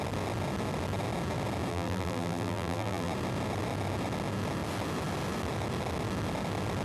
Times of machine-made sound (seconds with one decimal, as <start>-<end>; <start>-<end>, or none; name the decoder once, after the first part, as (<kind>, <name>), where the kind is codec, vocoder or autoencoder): 1.7-3.1 (vocoder, BigVGAN v2)

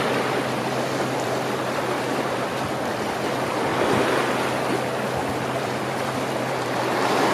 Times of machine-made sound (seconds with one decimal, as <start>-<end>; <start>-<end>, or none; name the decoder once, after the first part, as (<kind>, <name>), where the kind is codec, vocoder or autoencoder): 0.0-3.7 (vocoder, BigVGAN v2); 5.6-7.3

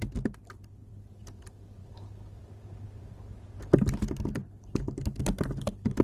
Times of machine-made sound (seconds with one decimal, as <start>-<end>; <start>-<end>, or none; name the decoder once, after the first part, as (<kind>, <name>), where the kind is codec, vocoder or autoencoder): none